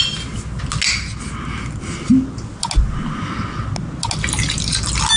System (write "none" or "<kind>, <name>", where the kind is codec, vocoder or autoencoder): none